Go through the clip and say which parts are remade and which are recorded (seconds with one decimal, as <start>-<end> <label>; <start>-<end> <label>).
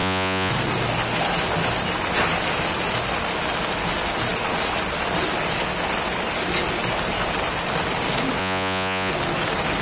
0.0-0.5 remade; 0.5-8.4 recorded; 8.4-9.1 remade; 9.1-9.8 recorded